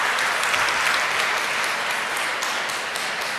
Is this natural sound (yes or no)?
yes